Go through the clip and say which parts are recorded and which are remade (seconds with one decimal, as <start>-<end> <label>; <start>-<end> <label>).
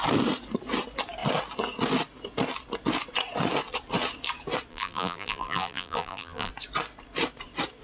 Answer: 0.0-4.7 recorded; 4.7-6.5 remade; 6.5-7.8 recorded